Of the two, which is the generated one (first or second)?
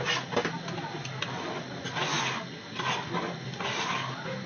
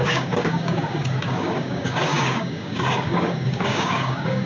second